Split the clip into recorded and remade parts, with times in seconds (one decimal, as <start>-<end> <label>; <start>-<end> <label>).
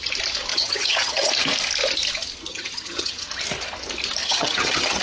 0.0-0.5 recorded; 0.5-1.3 remade; 1.3-2.5 recorded; 2.5-3.3 remade; 3.3-4.2 recorded; 4.2-5.0 remade